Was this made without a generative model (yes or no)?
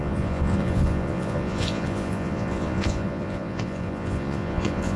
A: no